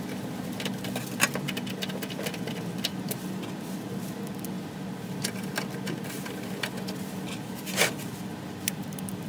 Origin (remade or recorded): recorded